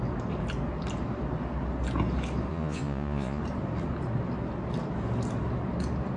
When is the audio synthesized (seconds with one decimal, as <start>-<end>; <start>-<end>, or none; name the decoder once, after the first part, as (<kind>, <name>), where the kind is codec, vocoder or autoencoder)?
2.5-3.4 (vocoder, Vocos)